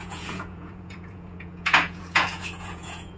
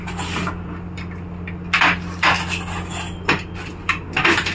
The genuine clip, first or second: second